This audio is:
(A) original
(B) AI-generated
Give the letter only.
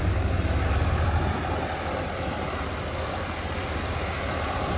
A